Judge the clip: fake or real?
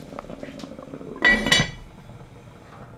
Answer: real